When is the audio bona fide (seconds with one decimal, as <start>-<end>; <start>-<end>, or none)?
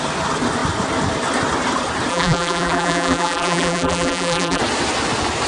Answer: 0.0-2.1; 4.6-5.5